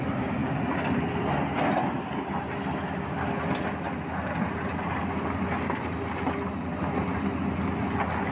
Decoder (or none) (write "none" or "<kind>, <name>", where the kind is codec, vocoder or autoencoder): none